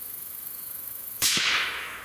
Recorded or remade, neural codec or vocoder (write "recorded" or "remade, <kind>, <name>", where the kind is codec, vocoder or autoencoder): remade, autoencoder, DAC-VAE